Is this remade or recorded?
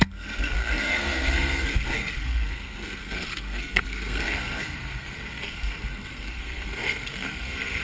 remade